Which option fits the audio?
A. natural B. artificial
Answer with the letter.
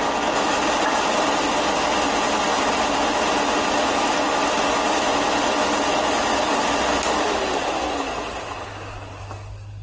A